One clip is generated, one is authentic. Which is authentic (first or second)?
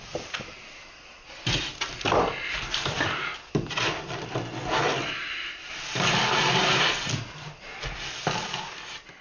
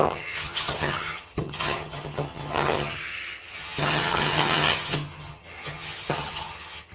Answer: first